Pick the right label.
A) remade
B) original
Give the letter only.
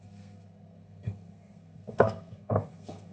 A